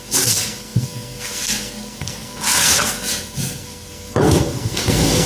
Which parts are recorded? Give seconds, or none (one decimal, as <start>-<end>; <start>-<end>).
none